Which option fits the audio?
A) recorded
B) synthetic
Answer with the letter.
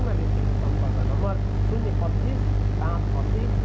A